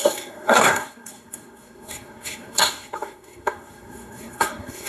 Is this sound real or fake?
fake